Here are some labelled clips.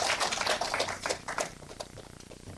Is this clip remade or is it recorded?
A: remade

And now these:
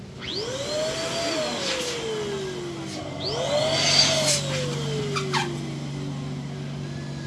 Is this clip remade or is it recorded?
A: recorded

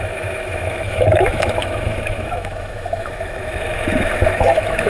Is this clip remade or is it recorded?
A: remade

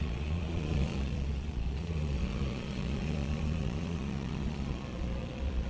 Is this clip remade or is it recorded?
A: remade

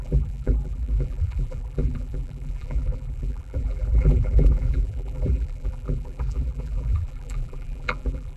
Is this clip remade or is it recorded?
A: remade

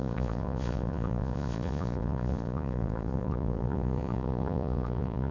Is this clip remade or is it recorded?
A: remade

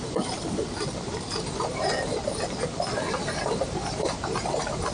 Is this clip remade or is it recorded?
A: remade